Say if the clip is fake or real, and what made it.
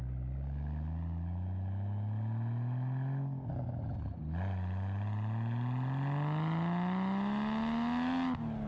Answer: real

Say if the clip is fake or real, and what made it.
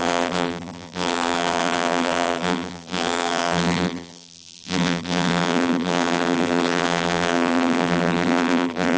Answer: fake, vocoder, BigVGAN v2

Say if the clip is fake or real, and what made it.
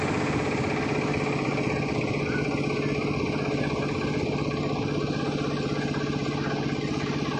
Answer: real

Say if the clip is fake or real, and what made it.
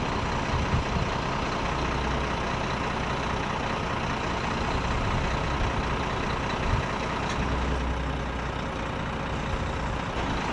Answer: real